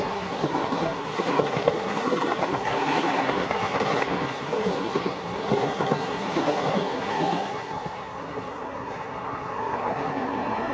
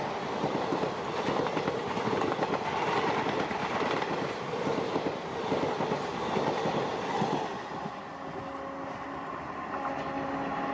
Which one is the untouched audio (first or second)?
second